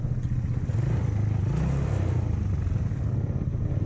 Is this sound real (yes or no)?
yes